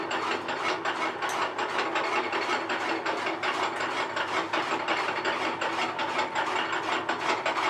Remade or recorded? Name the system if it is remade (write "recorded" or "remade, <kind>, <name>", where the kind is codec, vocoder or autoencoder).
recorded